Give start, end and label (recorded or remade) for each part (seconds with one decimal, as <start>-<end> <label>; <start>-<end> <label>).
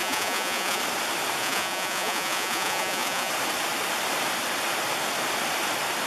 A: 0.0-0.8 remade; 0.8-1.4 recorded; 1.4-3.3 remade; 3.3-6.1 recorded